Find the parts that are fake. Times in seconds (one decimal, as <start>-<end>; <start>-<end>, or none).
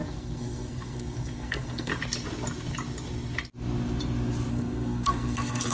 0.0-1.9; 4.5-5.7